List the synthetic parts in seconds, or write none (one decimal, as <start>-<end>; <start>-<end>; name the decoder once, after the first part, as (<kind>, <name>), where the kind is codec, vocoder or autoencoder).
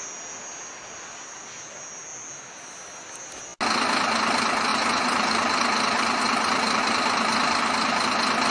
4.7-6.8 (vocoder, BigVGAN v2)